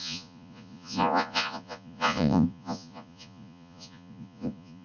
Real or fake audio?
fake